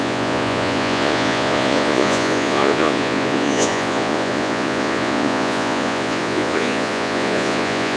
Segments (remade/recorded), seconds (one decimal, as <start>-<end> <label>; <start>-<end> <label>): 0.0-8.0 remade

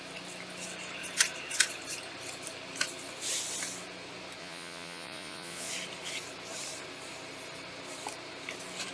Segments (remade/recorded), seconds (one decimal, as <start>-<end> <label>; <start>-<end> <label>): 0.0-4.4 recorded; 4.4-5.7 remade; 5.7-8.9 recorded

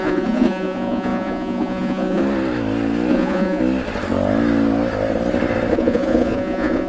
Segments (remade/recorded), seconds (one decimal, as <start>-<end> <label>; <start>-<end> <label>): 0.0-2.2 remade; 2.2-3.1 recorded; 3.1-3.6 remade; 3.6-5.7 recorded; 5.7-6.9 remade

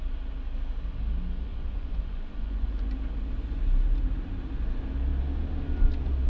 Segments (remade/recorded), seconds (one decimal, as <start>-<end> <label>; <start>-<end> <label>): 0.0-1.5 recorded; 1.5-2.9 remade; 2.9-6.3 recorded